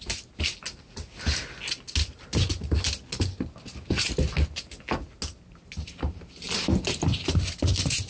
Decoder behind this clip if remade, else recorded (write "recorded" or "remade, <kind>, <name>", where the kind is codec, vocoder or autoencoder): recorded